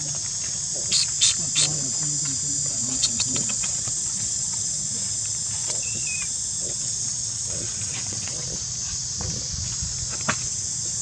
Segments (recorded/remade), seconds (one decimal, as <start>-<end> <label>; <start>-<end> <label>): 0.0-2.7 recorded; 2.7-4.9 remade; 4.9-5.6 recorded; 5.6-6.1 remade; 6.1-6.6 recorded; 6.6-8.5 remade; 8.5-11.0 recorded

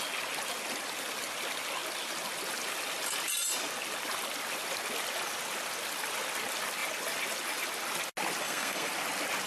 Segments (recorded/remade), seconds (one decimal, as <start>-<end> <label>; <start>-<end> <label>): 0.0-8.4 recorded; 8.4-8.9 remade; 8.9-9.5 recorded

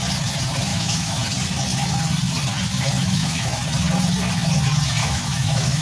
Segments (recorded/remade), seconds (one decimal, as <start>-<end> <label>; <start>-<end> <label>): 0.0-0.7 recorded; 0.7-1.2 remade; 1.2-3.0 recorded; 3.0-3.6 remade; 3.6-5.0 recorded; 5.0-5.8 remade

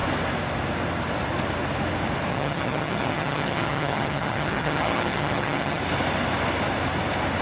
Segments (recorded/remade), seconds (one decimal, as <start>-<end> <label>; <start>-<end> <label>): 0.0-2.3 recorded; 2.3-5.8 remade; 5.8-7.4 recorded

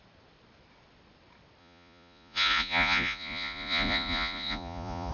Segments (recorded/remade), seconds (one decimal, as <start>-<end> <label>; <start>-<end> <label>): 0.0-1.6 recorded; 1.6-5.1 remade

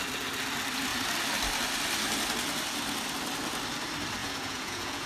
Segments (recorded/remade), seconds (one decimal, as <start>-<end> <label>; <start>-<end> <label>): 0.0-4.2 recorded; 4.2-5.1 remade